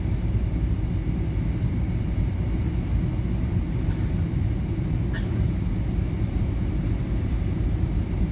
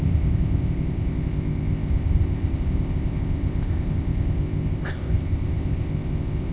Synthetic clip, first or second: second